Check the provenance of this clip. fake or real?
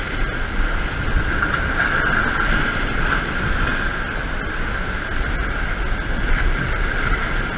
real